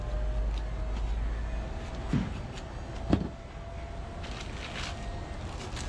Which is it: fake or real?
real